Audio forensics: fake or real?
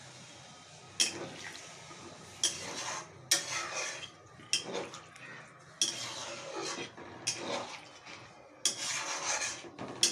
real